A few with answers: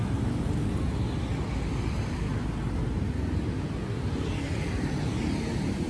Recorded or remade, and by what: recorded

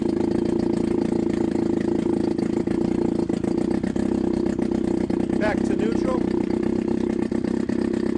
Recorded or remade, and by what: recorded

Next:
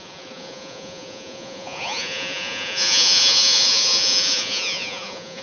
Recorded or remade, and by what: remade, vocoder, Vocos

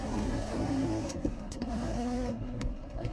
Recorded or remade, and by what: remade, codec, SNAC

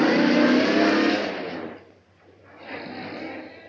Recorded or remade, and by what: recorded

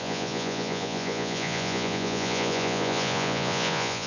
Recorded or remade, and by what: remade, vocoder, Vocos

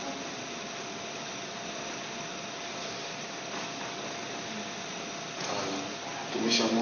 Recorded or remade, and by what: recorded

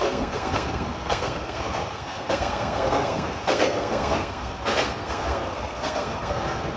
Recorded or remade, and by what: remade, codec, SNAC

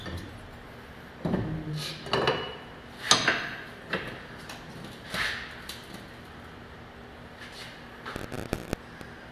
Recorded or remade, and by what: recorded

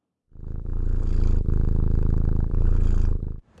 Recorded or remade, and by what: recorded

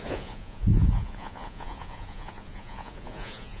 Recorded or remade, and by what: remade, vocoder, Vocos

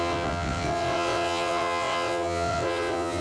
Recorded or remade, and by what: remade, vocoder, WaveNeXt